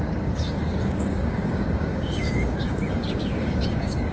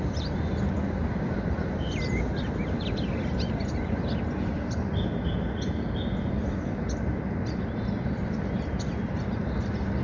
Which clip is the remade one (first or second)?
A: first